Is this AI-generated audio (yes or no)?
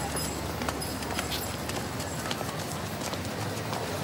no